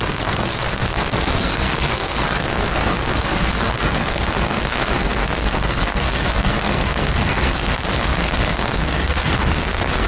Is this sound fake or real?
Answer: fake